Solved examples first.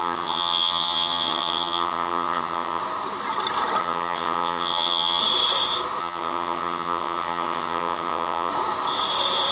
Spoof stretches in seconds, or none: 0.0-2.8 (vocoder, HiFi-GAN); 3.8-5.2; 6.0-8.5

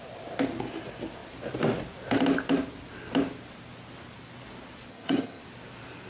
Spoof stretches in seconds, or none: 4.9-5.4 (vocoder, HiFi-GAN)